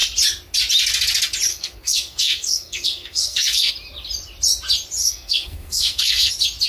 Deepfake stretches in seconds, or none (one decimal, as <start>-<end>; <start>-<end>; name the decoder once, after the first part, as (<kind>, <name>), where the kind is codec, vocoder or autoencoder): 1.5-3.7 (codec, SNAC); 5.0-6.3